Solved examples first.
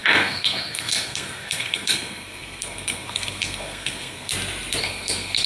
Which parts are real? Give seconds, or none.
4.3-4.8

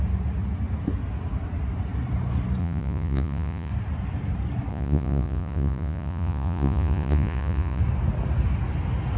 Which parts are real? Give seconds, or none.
0.0-2.6; 3.7-4.7; 7.8-9.2

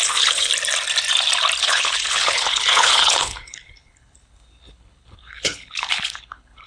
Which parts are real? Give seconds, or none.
0.5-1.6

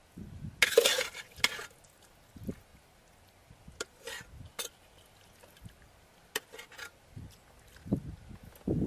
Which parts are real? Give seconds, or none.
0.0-8.9

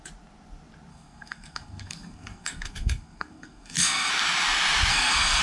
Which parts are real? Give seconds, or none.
0.0-0.9; 4.1-4.9